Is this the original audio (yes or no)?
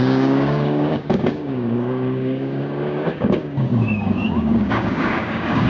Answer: no